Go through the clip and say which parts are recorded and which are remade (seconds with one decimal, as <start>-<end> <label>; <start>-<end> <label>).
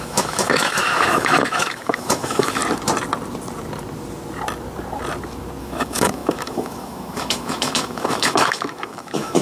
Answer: 0.0-2.6 remade; 2.6-5.6 recorded; 5.6-9.4 remade